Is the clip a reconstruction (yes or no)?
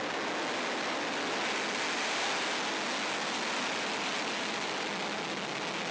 no